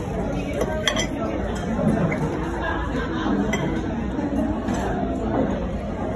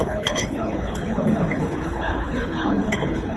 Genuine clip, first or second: first